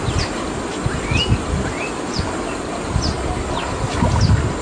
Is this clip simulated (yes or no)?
no